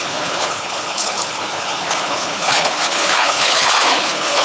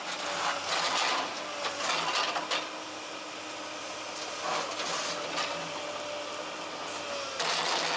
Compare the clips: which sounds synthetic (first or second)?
first